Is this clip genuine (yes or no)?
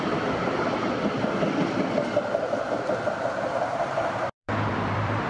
no